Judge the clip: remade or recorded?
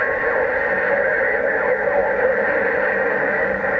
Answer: recorded